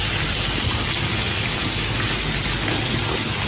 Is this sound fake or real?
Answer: real